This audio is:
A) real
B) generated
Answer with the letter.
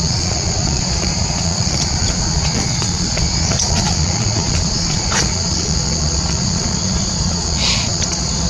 B